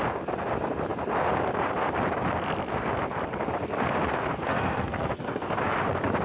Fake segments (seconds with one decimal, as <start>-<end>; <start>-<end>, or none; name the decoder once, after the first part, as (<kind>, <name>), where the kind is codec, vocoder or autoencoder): 4.3-5.5 (codec, SNAC)